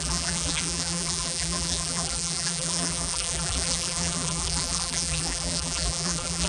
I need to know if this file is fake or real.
fake